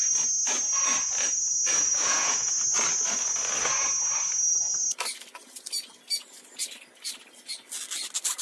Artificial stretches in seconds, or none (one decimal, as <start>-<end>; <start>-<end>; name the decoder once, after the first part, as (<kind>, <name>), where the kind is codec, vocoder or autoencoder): 1.8-2.8 (vocoder, Vocos)